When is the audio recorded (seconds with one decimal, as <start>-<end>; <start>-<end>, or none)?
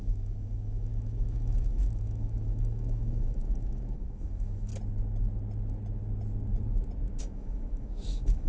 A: 4.7-7.2